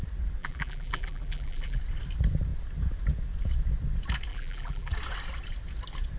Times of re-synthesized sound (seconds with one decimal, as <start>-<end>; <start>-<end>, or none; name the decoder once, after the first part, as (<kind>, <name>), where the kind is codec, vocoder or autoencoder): 0.4-1.8 (vocoder, BigVGAN v2); 4.3-4.9